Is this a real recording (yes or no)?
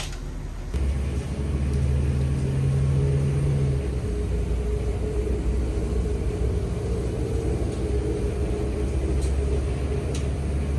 yes